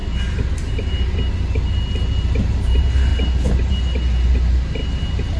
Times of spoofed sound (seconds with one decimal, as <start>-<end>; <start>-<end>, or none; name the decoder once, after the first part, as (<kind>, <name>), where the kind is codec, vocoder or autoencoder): none